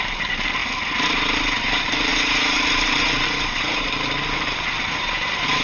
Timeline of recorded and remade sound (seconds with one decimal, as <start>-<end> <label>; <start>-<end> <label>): 0.0-0.6 remade; 0.6-1.6 recorded; 1.6-5.6 remade